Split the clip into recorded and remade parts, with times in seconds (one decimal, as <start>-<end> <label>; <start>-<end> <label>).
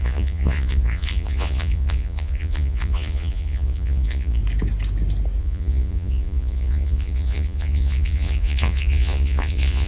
0.0-4.4 remade; 4.4-5.4 recorded; 5.4-9.9 remade